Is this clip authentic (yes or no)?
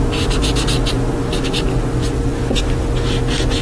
yes